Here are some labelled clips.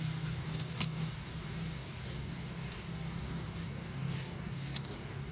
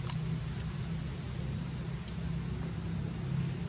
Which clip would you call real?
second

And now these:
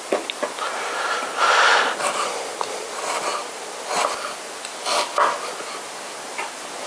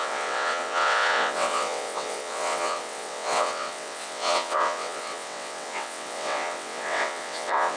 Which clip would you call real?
first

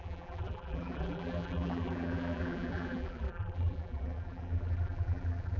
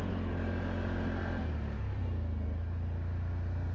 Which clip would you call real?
second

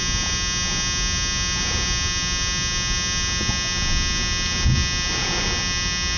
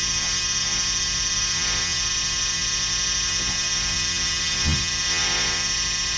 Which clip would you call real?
first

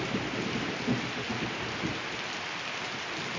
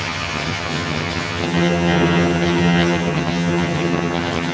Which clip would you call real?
first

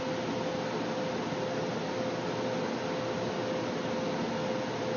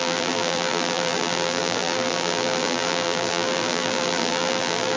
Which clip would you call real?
first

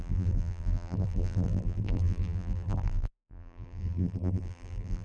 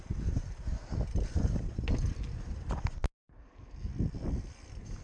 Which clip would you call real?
second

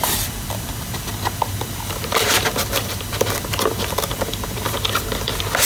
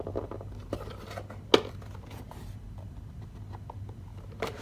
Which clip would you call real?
second